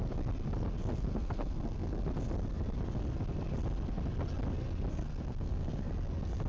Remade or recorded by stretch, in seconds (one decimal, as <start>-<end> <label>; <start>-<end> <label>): 0.0-0.9 recorded; 0.9-2.0 remade; 2.0-4.9 recorded; 4.9-5.9 remade; 5.9-6.5 recorded